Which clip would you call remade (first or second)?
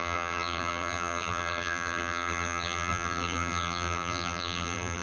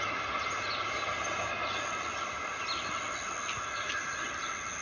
first